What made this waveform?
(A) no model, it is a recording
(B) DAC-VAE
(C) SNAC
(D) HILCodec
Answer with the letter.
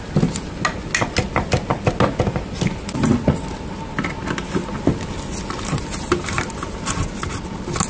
A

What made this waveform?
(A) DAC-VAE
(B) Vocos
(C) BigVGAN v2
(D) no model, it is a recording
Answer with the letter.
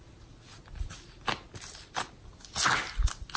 D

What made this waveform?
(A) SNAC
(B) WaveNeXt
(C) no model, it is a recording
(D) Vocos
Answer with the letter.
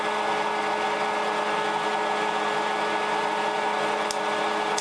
C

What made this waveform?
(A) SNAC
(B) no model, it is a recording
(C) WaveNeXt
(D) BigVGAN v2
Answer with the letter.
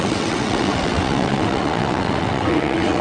C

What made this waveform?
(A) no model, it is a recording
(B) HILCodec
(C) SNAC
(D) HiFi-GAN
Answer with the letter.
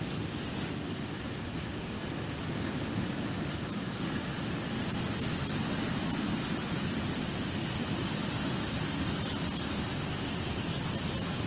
A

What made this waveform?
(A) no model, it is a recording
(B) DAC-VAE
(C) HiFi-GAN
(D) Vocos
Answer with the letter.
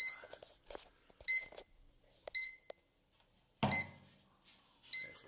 A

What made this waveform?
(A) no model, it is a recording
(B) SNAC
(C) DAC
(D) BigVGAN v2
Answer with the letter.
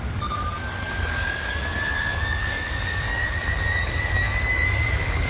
C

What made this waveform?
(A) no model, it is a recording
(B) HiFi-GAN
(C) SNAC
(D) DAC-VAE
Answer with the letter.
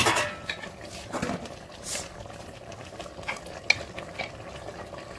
A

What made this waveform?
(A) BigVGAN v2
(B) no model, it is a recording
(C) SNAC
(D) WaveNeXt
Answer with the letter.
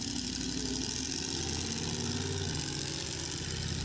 B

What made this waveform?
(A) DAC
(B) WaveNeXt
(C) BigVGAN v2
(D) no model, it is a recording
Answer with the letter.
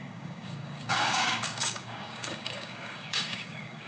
A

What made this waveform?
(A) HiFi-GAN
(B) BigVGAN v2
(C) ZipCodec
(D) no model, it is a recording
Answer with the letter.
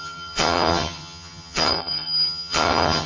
A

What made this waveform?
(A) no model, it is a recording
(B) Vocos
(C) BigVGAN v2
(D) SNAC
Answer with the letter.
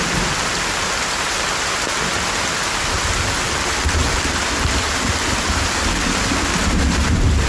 A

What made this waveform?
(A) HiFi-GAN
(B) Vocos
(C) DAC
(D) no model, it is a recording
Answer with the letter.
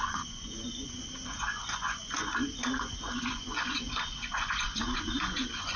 B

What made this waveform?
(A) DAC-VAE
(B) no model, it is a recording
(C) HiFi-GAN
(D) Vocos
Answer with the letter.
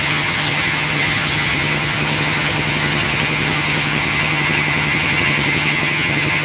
C